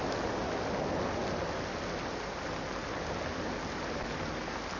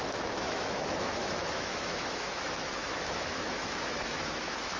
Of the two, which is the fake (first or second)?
second